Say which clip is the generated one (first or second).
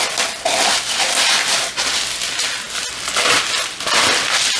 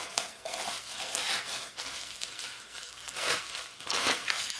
second